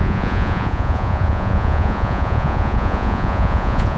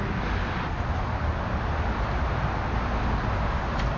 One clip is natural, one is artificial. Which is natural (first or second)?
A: second